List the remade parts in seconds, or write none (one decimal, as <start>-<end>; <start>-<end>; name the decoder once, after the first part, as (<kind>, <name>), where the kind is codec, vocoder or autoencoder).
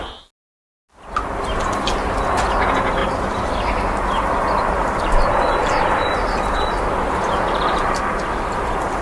3.0-8.0 (vocoder, BigVGAN v2)